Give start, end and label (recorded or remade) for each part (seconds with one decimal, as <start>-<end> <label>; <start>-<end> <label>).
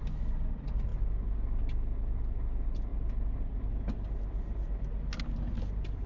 0.0-6.1 recorded